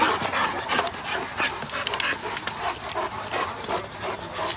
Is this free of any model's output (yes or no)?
yes